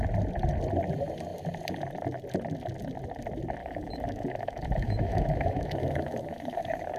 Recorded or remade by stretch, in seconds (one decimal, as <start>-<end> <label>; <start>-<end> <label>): 0.0-3.6 recorded; 3.6-7.0 remade